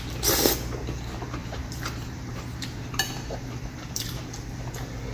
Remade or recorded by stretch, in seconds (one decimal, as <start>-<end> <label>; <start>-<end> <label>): 0.0-1.4 recorded; 1.4-4.2 remade; 4.2-5.1 recorded